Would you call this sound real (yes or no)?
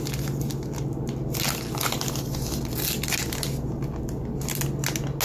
yes